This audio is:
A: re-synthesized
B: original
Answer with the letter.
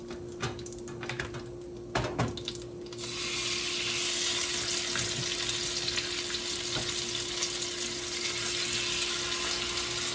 B